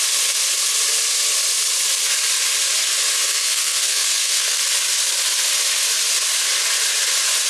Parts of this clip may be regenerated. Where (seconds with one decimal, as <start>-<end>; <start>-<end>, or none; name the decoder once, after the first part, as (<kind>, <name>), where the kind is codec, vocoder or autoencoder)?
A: 3.2-4.6 (codec, SNAC)